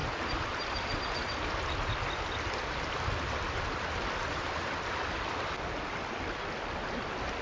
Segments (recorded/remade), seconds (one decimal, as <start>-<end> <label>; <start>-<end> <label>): 0.0-7.4 recorded

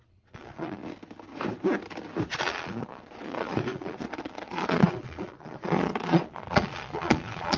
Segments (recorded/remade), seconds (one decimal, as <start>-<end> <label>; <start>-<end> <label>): 0.0-0.8 remade; 0.8-2.3 recorded; 2.3-7.6 remade

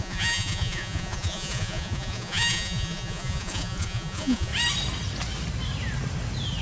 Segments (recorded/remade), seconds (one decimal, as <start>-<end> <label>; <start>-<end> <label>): 0.0-4.5 remade; 4.5-6.6 recorded

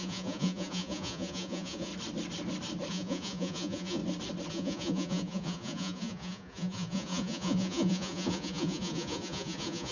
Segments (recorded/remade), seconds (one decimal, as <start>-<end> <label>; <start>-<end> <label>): 0.0-1.9 remade; 1.9-2.9 recorded; 2.9-4.0 remade; 4.0-4.5 recorded; 4.5-9.9 remade